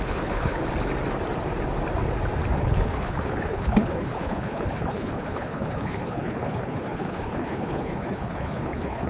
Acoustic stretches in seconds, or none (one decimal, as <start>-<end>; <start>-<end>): 0.6-2.6